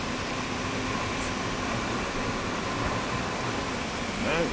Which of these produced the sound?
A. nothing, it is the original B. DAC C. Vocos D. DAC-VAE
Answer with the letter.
A